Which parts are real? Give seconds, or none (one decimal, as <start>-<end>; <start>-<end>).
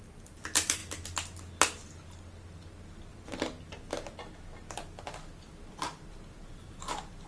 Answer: 0.8-4.7